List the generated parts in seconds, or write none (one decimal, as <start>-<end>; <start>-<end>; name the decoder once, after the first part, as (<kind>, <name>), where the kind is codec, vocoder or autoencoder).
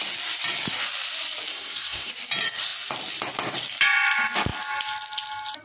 1.5-2.1 (codec, SNAC)